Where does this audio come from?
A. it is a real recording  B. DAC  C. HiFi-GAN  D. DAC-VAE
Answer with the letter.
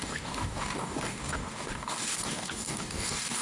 B